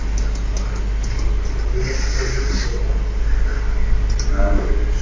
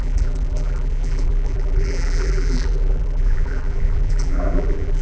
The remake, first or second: second